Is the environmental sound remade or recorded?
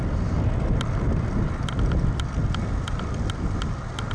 remade